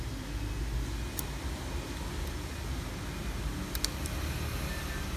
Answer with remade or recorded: recorded